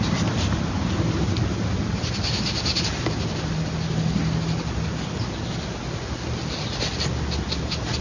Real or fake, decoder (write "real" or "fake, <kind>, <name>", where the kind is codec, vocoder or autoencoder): real